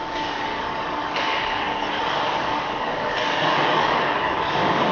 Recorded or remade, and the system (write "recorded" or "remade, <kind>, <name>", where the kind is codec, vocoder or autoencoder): remade, codec, DAC